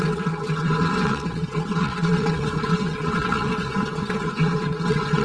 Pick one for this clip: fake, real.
fake